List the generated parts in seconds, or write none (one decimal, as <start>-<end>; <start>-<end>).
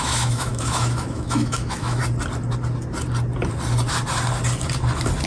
0.0-2.0